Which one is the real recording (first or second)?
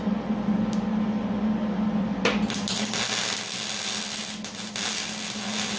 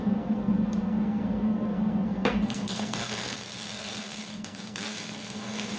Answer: first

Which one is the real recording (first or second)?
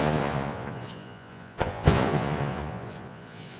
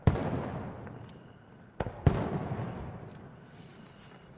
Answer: second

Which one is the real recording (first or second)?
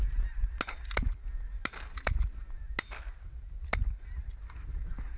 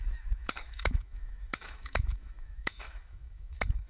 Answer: first